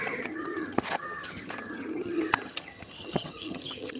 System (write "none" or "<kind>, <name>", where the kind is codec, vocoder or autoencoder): vocoder, HiFi-GAN